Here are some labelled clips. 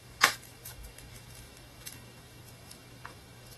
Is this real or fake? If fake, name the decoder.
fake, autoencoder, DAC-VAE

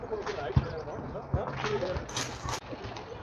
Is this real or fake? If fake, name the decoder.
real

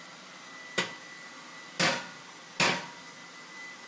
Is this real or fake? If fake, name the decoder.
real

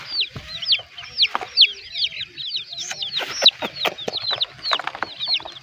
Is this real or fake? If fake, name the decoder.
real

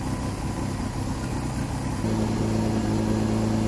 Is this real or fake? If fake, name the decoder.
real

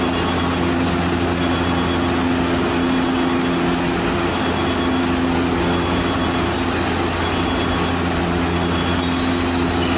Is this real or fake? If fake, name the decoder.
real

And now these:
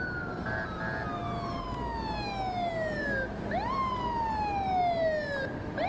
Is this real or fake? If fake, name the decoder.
real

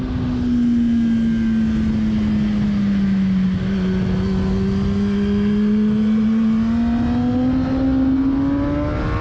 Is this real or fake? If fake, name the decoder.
real